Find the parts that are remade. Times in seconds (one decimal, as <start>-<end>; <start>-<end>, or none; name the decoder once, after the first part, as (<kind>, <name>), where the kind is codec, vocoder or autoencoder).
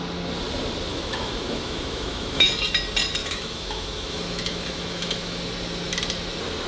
0.9-2.5 (autoencoder, DAC-VAE); 3.2-5.4